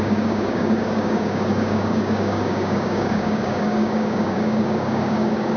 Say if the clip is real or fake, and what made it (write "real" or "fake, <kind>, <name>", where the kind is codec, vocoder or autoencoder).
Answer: fake, codec, DAC